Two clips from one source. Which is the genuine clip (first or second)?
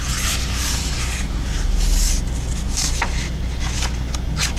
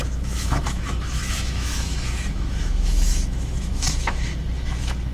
first